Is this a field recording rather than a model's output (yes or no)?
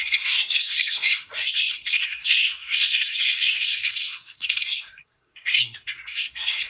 no